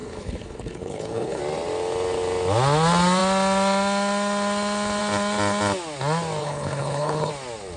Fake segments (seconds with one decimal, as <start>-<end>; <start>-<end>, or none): 0.0-1.4; 6.4-7.3